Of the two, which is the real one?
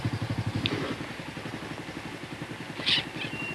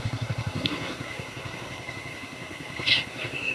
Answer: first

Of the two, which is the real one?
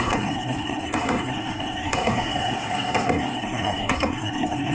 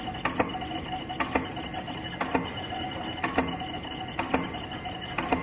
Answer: second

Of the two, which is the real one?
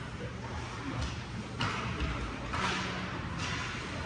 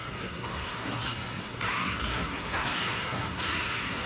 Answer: first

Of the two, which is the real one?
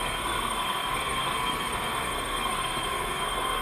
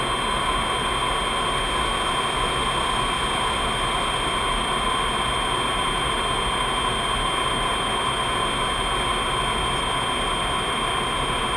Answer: second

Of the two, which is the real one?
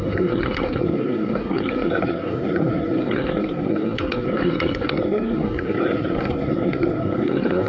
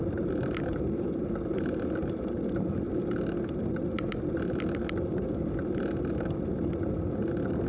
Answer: second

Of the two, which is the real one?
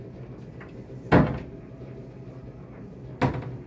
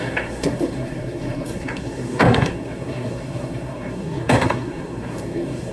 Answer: first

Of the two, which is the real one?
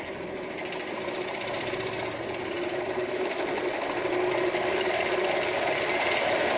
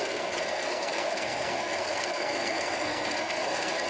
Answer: first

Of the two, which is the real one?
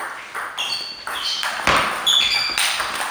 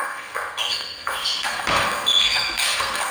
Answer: first